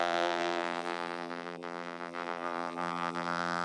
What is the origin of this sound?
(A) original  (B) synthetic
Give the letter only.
B